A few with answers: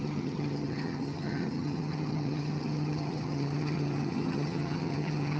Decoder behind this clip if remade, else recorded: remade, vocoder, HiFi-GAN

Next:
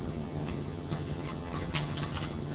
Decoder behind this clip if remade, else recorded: remade, vocoder, HiFi-GAN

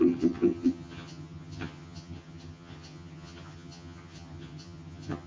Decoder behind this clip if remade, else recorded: remade, vocoder, HiFi-GAN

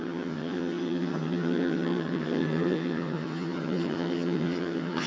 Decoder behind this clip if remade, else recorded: remade, vocoder, HiFi-GAN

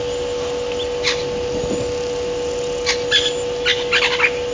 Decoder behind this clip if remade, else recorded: recorded